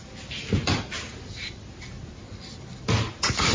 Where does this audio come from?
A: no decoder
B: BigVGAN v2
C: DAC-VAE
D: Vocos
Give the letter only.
A